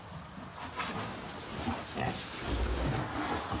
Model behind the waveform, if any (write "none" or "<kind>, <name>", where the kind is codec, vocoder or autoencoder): none